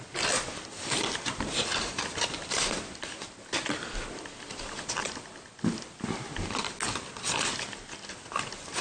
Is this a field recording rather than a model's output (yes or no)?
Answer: yes